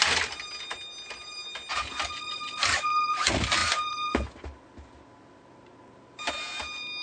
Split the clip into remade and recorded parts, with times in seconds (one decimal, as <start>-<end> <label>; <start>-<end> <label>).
0.0-7.0 recorded